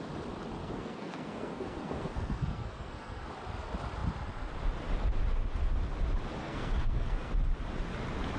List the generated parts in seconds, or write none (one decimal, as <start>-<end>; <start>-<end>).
0.6-3.3; 6.4-7.3